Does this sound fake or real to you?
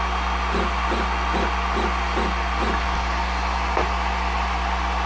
real